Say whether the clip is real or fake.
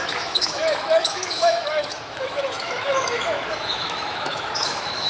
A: fake